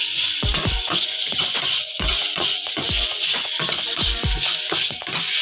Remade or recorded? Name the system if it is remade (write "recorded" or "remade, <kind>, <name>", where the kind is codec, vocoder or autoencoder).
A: remade, vocoder, Vocos